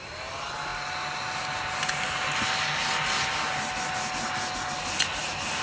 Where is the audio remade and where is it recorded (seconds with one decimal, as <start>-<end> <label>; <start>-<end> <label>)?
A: 0.0-5.6 recorded